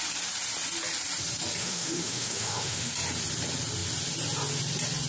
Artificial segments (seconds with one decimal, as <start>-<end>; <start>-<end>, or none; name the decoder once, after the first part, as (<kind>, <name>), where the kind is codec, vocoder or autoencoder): 1.6-2.9 (autoencoder, DAC-VAE)